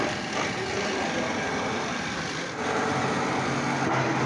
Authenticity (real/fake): real